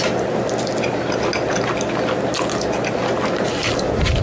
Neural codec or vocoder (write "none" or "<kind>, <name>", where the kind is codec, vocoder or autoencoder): none